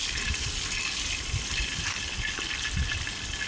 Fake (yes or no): no